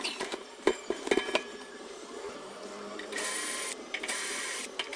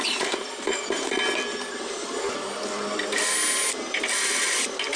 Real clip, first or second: second